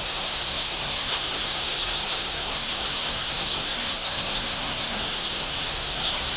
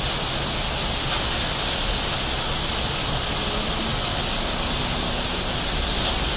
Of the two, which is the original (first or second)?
second